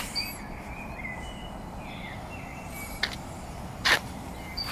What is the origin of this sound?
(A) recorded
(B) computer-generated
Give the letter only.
A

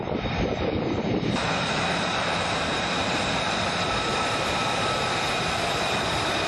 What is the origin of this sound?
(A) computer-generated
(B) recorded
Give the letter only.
A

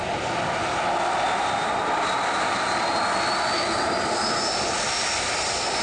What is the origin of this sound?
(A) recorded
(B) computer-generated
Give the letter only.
A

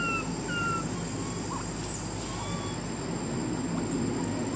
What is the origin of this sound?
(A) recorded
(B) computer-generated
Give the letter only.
A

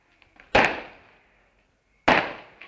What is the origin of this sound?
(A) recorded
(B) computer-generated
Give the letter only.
A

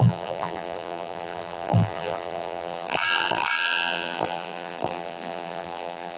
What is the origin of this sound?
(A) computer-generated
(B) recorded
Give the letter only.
A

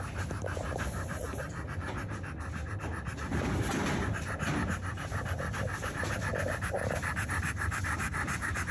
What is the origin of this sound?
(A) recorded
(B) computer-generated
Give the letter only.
B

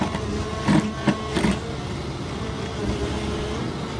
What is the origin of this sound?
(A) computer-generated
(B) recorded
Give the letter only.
B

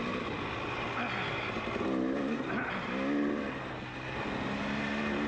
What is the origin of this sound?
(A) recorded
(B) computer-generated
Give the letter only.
A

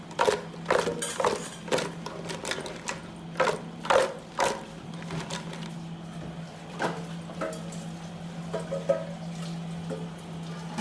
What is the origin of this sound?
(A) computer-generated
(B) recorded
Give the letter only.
B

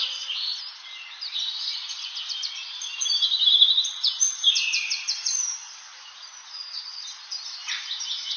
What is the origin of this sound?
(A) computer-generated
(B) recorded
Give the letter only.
A